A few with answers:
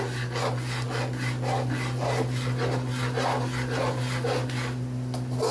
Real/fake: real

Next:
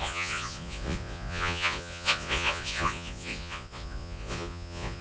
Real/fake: fake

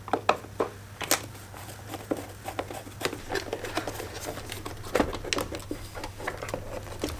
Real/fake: real